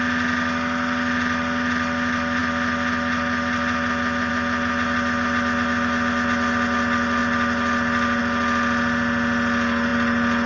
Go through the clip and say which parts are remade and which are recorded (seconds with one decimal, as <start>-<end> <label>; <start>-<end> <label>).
0.0-10.5 recorded